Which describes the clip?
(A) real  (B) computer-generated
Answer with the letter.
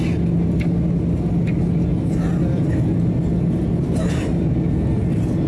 A